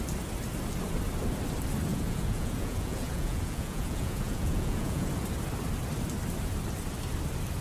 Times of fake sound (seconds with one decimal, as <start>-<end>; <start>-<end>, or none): 1.9-5.1